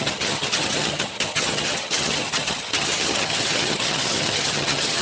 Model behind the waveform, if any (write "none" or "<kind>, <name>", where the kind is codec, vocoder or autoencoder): vocoder, HiFi-GAN